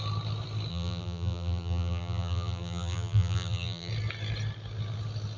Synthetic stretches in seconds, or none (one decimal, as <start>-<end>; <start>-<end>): 0.7-3.9